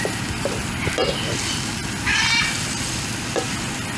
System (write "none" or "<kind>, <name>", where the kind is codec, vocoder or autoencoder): none